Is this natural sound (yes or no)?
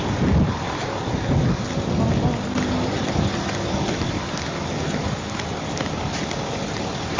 yes